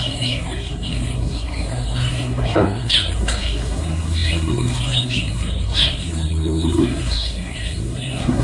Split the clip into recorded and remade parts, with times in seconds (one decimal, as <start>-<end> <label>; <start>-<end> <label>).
0.0-8.4 remade